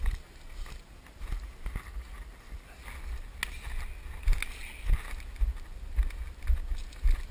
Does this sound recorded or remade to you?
recorded